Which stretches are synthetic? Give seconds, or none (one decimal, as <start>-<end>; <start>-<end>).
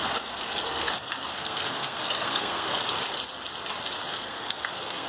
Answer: 0.0-3.0; 4.1-5.1